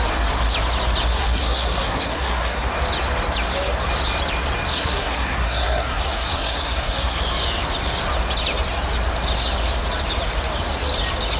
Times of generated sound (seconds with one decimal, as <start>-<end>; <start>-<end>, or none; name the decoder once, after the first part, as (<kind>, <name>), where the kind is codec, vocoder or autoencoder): 1.1-2.7 (codec, SNAC); 4.7-7.2